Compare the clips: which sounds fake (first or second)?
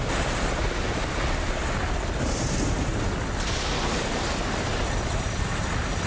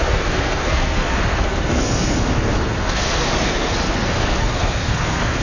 second